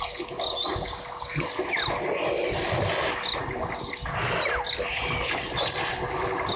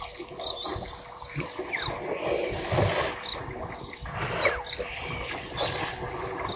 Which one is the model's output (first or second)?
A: second